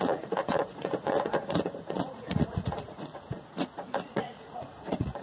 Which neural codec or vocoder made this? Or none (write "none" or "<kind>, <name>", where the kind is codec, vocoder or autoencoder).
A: vocoder, Vocos